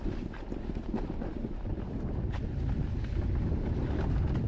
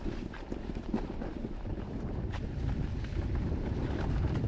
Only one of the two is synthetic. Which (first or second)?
second